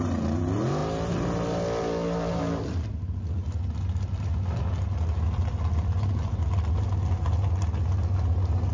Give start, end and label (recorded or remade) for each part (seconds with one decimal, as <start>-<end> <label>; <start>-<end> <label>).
0.0-8.7 recorded